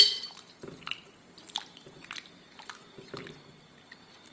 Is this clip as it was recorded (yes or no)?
no